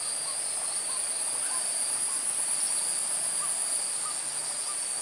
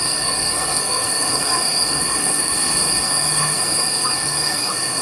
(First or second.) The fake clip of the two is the second